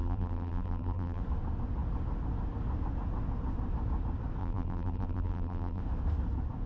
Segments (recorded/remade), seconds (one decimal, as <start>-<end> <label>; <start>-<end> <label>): 0.0-1.2 remade; 1.2-4.4 recorded; 4.4-5.8 remade; 5.8-6.7 recorded